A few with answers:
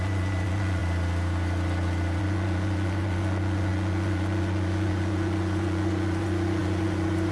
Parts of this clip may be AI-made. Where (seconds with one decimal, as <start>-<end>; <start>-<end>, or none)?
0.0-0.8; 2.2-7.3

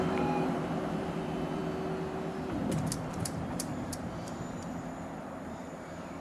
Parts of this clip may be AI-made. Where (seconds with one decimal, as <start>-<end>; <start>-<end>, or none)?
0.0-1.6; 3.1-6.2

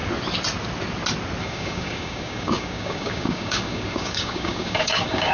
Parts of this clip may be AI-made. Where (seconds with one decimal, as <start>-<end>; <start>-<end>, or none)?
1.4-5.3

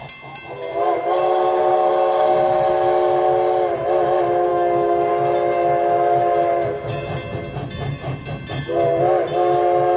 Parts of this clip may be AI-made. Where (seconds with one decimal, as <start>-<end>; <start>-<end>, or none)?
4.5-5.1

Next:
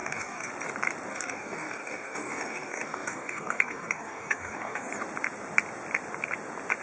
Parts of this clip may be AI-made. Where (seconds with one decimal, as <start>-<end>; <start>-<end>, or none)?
0.0-0.5; 1.1-4.9

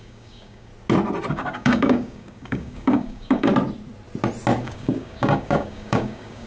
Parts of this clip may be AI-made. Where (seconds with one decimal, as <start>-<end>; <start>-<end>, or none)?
0.0-0.7; 1.3-3.5; 4.6-6.5

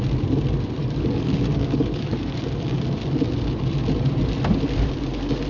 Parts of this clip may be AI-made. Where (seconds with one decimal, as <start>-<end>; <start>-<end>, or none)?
0.8-2.8

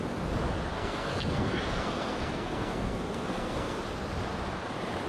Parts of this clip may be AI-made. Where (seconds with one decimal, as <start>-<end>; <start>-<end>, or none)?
0.7-3.8